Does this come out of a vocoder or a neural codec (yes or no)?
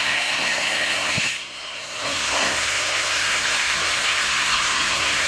yes